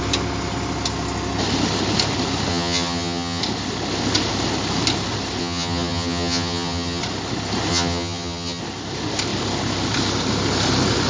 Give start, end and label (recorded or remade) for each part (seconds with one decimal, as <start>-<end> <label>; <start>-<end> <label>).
0.0-2.5 recorded; 2.5-3.4 remade; 3.4-5.4 recorded; 5.4-7.0 remade; 7.0-7.7 recorded; 7.7-8.6 remade; 8.6-11.1 recorded